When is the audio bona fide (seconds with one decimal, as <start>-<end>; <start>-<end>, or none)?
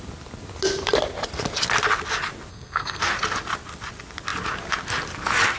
0.0-2.5; 3.0-5.6